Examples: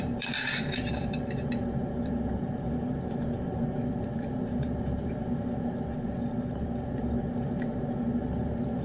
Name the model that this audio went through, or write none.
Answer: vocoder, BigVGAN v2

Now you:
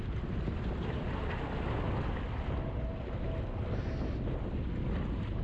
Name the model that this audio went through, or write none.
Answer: none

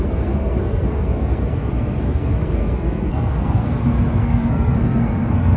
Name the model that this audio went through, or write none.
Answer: codec, SNAC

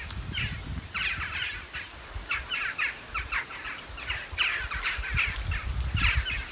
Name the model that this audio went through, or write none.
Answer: none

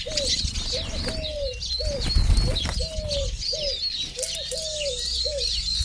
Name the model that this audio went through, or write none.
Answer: none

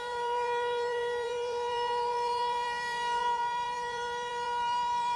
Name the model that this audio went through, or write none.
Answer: vocoder, BigVGAN v2